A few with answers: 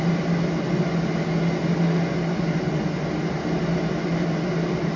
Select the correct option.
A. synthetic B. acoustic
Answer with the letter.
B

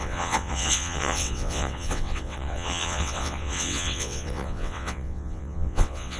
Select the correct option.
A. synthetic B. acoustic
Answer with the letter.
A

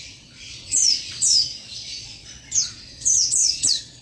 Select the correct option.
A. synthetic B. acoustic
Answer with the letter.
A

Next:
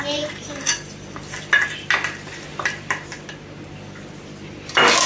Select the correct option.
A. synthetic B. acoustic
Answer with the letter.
B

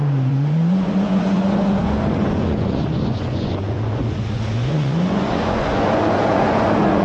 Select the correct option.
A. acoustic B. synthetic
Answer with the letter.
B